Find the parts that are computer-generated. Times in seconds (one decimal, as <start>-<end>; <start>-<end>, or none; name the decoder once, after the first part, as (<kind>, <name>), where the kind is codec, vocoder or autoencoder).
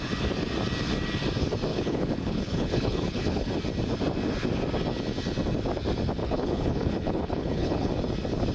1.7-3.5 (codec, HILCodec); 6.2-7.9